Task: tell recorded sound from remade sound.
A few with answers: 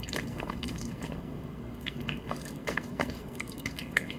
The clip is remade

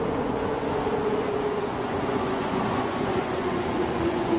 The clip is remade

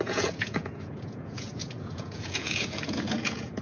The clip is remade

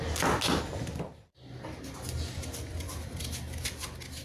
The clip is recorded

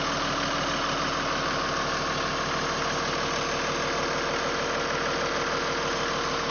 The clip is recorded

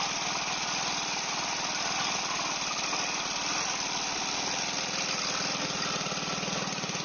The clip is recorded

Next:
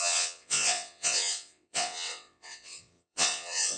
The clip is remade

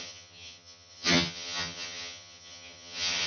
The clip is remade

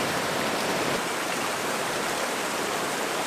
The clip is remade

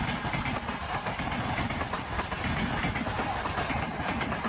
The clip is recorded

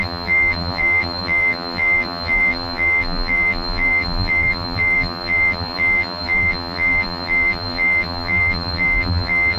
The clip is remade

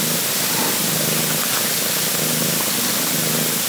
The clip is recorded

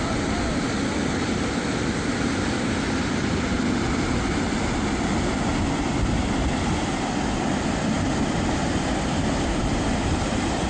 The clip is recorded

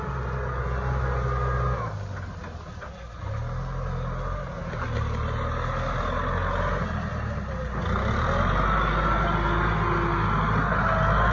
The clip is recorded